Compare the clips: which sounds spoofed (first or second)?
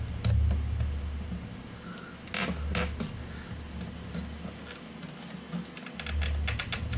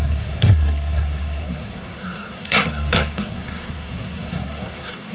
second